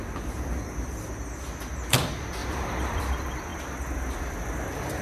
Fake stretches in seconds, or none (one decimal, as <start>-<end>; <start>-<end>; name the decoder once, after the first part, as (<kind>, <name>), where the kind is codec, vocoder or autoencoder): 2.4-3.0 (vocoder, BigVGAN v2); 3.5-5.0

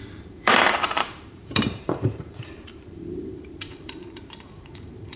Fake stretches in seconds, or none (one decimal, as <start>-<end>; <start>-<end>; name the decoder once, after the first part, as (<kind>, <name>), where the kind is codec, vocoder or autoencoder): 0.0-5.2 (vocoder, BigVGAN v2)

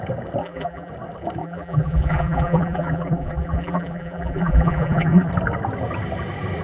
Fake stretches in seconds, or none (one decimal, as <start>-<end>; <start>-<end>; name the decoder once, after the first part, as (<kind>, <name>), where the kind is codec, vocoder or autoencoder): 0.4-0.9 (vocoder, BigVGAN v2); 1.4-5.3

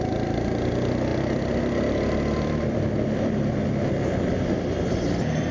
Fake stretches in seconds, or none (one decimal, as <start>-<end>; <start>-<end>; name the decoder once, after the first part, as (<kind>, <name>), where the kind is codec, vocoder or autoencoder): 1.1-4.4 (vocoder, BigVGAN v2)